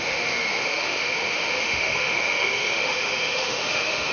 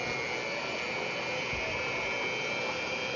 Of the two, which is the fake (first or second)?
first